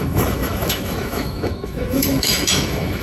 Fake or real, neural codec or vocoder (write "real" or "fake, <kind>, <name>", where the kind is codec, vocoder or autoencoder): fake, autoencoder, DAC-VAE